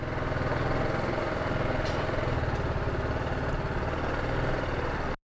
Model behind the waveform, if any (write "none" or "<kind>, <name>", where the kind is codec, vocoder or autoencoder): none